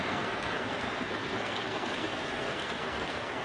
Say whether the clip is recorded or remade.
remade